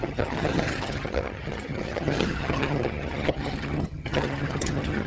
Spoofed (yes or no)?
yes